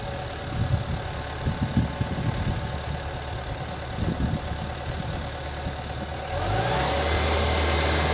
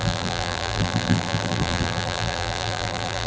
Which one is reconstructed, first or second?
second